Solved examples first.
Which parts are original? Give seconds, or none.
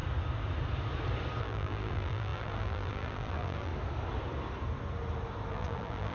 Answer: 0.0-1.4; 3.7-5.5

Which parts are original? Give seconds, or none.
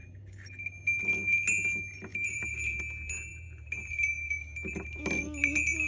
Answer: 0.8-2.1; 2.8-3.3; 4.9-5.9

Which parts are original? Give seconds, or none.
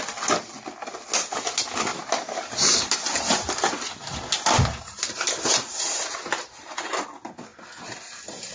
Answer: 0.0-1.9; 7.0-8.5